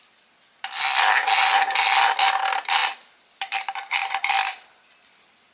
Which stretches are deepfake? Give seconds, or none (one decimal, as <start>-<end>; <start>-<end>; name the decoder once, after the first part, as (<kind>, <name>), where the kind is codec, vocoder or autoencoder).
none